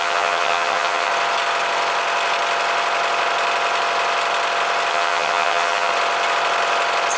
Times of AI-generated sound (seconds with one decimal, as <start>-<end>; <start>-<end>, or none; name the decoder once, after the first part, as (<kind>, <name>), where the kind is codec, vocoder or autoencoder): 0.0-1.1 (vocoder, HiFi-GAN); 4.9-5.9